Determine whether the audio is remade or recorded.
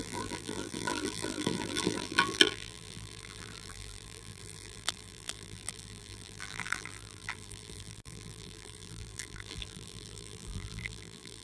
remade